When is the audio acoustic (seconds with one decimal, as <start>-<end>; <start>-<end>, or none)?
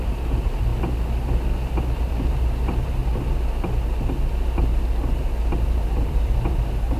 0.7-2.0; 3.0-5.6